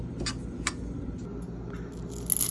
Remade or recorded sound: recorded